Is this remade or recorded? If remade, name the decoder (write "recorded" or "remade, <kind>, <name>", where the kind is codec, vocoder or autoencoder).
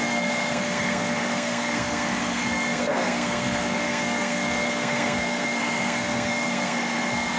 remade, codec, SNAC